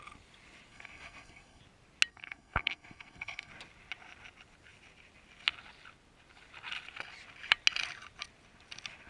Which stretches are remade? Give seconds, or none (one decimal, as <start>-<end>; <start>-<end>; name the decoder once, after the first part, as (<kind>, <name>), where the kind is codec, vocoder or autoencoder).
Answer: 0.7-1.6 (codec, SNAC); 2.1-3.5